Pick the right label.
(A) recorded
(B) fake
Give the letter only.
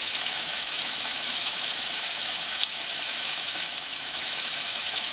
B